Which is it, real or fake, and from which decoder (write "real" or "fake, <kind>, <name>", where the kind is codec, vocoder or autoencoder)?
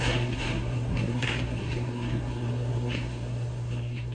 fake, codec, SNAC